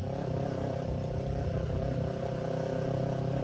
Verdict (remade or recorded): recorded